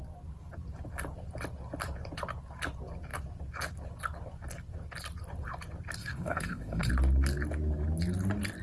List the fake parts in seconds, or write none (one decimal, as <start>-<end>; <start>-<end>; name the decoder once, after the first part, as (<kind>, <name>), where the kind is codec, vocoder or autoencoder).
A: 6.0-6.9 (codec, HILCodec)